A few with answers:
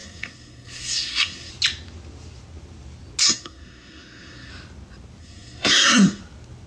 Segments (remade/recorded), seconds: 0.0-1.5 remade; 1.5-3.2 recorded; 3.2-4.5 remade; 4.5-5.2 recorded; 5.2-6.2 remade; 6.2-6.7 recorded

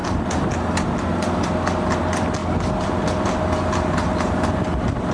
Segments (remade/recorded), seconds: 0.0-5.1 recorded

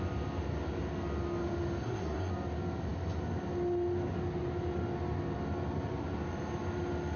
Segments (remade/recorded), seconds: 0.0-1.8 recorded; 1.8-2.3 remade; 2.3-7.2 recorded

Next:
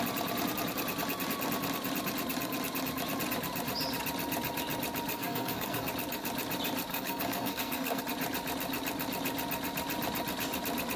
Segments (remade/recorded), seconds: 0.0-5.1 recorded; 5.1-5.9 remade; 5.9-6.9 recorded; 6.9-8.0 remade; 8.0-11.0 recorded

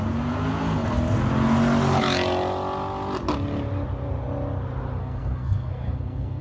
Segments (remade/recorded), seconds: 0.0-5.0 recorded; 5.0-6.4 remade

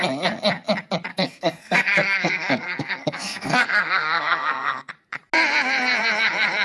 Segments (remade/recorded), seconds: 0.0-1.1 recorded; 1.1-4.9 remade; 4.9-6.6 recorded